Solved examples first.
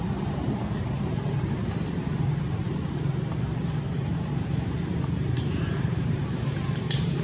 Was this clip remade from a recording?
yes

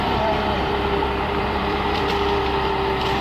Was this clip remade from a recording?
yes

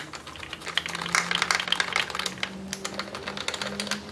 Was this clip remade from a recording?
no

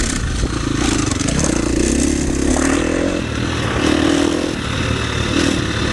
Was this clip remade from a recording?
no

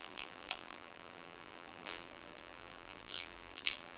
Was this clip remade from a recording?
yes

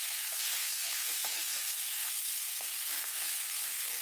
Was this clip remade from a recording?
yes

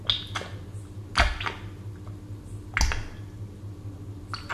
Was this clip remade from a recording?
no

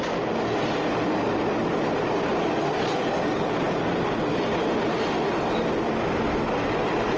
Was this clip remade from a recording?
no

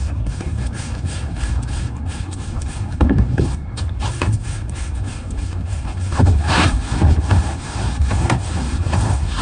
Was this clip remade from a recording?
yes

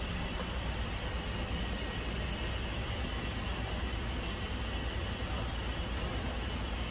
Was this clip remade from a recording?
no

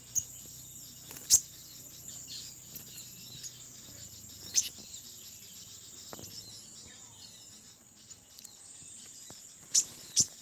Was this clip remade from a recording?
no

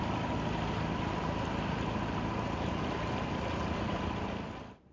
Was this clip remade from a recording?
no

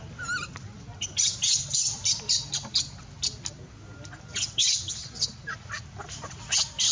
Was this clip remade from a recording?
no